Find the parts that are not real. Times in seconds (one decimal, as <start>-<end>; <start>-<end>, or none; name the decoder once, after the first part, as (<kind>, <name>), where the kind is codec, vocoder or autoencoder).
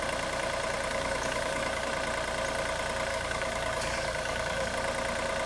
0.9-1.9 (codec, DAC); 3.1-4.7